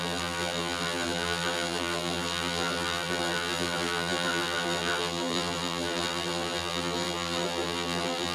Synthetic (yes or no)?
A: yes